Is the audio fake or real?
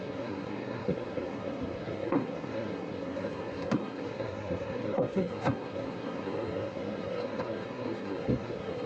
fake